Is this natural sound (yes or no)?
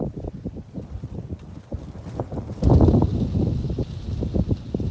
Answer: yes